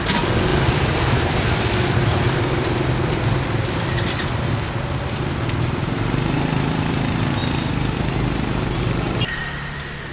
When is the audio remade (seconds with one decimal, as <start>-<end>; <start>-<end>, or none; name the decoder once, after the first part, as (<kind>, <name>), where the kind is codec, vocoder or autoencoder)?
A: 0.5-2.4 (vocoder, BigVGAN v2); 7.4-10.1